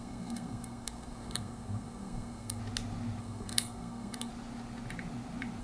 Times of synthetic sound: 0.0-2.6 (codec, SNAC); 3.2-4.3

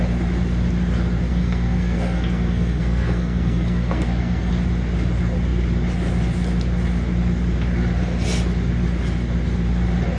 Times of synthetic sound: 1.3-4.5 (codec, SNAC)

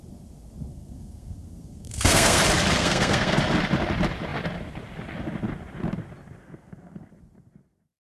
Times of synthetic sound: 0.7-2.4 (codec, SNAC); 2.8-3.4; 6.4-7.1

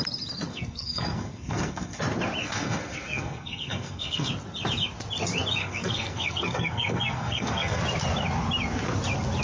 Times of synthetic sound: 0.5-2.0 (codec, SNAC); 2.4-4.3; 5.6-7.8

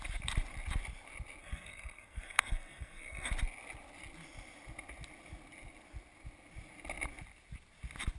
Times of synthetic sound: 1.4-3.3 (codec, SNAC)

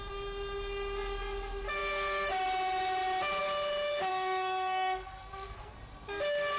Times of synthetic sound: 4.1-5.7 (codec, SNAC)

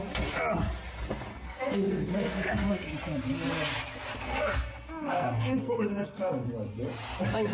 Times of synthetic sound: 1.3-2.9 (codec, SNAC); 4.2-6.5